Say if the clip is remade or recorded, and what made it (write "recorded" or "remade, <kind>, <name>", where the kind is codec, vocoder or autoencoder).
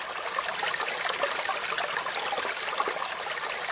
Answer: recorded